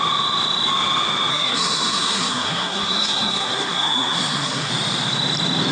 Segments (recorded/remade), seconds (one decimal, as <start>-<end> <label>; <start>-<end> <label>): 0.0-1.3 recorded; 1.3-4.7 remade; 4.7-5.7 recorded